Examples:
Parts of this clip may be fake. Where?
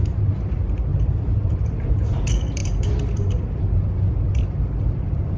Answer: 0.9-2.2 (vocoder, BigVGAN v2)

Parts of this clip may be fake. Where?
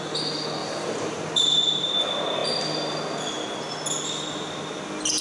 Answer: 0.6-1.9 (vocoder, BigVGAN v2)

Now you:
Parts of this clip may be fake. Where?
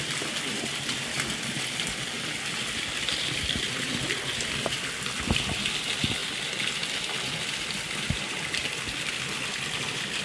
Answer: none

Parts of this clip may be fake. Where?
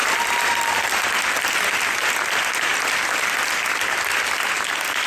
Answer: 0.0-0.8 (vocoder, BigVGAN v2); 2.7-3.5